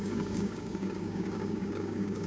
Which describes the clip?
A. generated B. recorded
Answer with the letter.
A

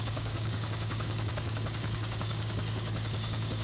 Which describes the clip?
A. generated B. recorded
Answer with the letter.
A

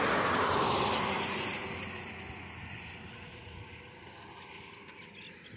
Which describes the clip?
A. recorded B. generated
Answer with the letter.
A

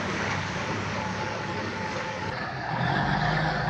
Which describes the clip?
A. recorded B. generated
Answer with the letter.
B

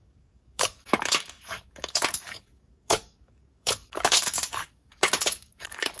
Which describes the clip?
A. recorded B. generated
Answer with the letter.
B